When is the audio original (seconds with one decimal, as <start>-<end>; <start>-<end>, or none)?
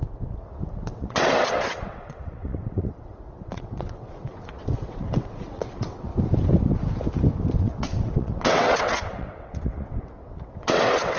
6.1-7.6